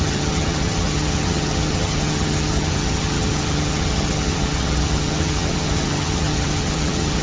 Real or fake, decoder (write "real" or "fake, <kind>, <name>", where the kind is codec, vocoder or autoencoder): fake, vocoder, HiFi-GAN